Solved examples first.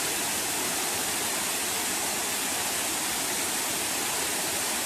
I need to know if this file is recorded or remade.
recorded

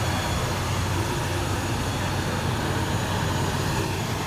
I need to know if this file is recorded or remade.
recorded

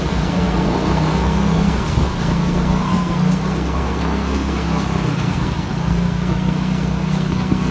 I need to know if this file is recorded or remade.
remade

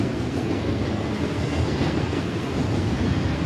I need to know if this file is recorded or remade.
remade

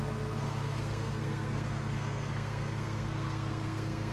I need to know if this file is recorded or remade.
remade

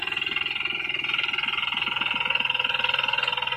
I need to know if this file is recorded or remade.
recorded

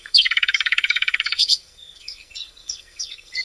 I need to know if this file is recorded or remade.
remade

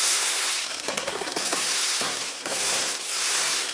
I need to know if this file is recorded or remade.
remade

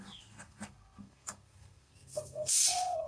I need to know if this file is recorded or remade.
remade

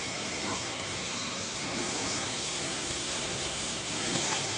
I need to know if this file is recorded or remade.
remade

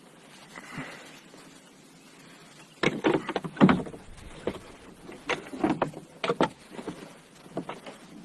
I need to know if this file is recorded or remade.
recorded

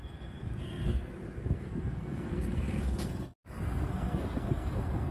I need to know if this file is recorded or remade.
remade